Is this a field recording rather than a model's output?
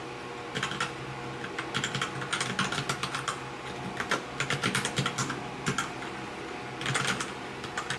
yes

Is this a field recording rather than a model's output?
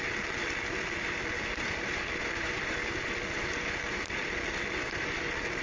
no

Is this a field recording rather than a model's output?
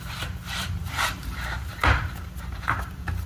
no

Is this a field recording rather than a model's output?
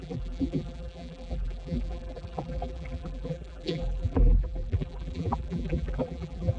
no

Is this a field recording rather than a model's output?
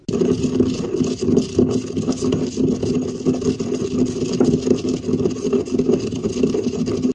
yes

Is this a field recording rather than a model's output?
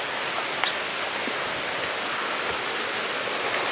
yes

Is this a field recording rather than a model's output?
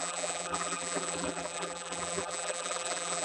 no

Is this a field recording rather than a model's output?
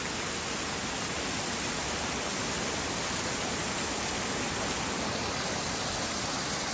yes